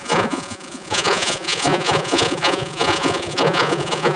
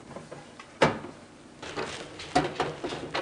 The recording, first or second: second